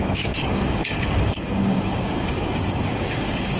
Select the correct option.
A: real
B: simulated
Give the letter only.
B